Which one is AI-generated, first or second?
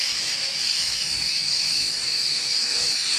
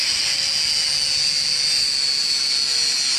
first